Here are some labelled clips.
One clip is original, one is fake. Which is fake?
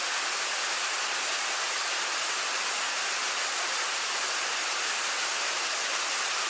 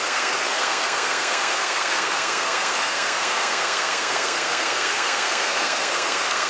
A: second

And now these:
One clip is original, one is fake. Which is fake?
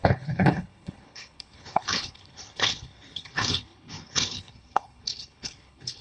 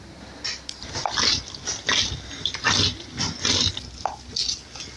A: first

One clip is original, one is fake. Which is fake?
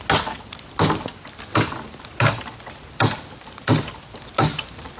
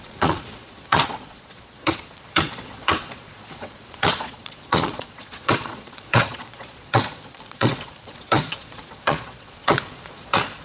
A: second